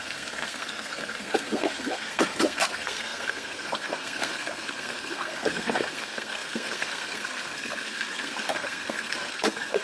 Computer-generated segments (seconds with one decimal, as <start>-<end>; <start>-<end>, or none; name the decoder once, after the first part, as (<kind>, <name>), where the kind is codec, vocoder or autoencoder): 0.0-9.8 (codec, SNAC)